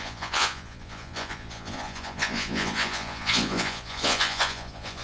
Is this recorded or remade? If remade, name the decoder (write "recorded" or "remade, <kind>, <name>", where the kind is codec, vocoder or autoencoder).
remade, vocoder, Vocos